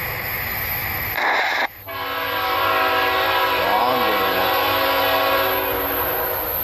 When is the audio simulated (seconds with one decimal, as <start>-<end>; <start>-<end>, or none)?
none